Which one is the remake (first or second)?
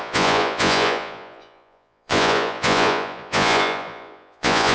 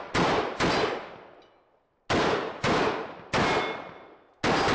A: first